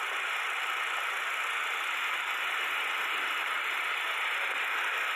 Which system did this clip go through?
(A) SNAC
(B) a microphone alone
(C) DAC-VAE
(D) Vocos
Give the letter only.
B